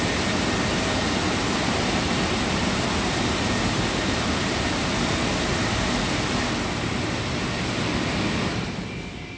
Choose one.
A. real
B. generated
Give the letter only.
A